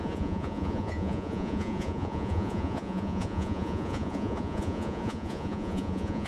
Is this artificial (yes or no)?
yes